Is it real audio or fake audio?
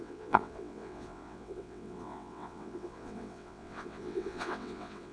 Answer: fake